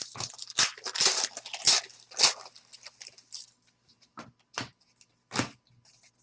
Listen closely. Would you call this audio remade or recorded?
recorded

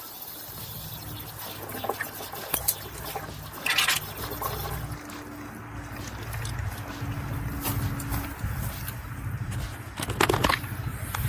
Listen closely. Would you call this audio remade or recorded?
recorded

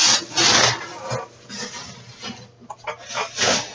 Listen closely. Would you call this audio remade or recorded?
recorded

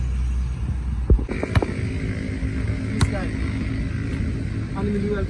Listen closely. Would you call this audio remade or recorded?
recorded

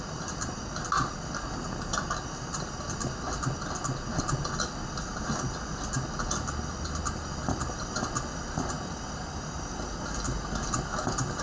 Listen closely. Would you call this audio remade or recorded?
recorded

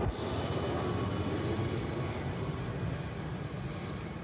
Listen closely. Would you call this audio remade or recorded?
recorded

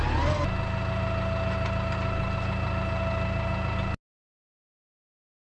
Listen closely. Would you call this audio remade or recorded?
recorded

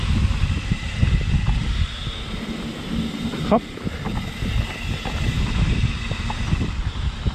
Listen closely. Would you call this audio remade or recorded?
recorded